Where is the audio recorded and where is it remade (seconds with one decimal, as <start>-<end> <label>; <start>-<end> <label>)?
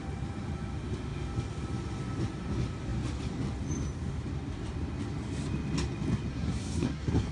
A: 0.0-6.3 recorded; 6.3-7.3 remade